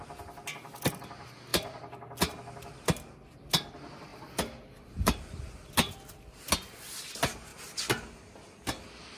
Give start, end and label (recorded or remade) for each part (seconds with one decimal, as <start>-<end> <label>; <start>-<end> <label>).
0.0-9.2 recorded